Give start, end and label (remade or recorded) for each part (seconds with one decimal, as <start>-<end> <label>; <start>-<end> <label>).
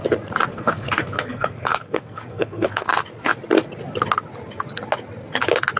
0.0-0.5 recorded; 0.5-2.9 remade; 2.9-5.8 recorded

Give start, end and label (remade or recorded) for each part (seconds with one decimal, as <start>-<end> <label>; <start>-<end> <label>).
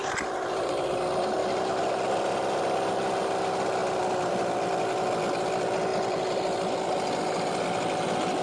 0.0-8.4 recorded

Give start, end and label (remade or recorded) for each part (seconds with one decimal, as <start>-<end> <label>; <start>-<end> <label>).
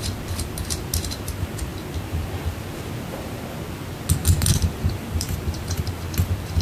0.0-4.2 recorded; 4.2-5.8 remade; 5.8-6.6 recorded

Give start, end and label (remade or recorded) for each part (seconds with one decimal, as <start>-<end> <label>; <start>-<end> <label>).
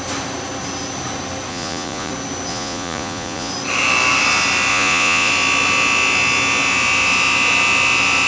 0.0-1.5 recorded; 1.5-2.1 remade; 2.1-2.5 recorded; 2.5-3.5 remade; 3.5-4.7 recorded; 4.7-5.3 remade; 5.3-8.3 recorded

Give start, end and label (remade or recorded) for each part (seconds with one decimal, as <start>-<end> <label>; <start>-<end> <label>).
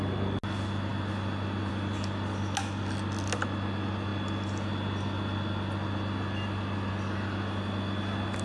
0.0-8.4 recorded